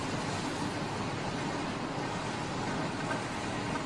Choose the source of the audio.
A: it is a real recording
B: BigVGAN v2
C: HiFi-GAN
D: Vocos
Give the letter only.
A